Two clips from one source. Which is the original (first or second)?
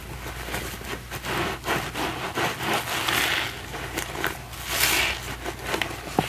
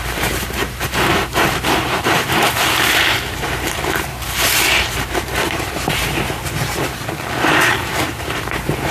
first